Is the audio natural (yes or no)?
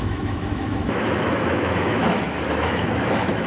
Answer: no